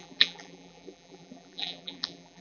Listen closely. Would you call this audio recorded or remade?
remade